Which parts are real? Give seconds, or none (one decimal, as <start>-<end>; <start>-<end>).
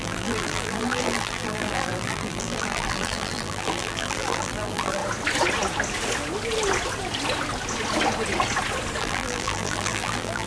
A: 5.0-9.0